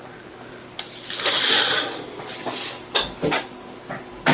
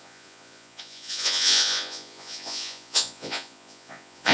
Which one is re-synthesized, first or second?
second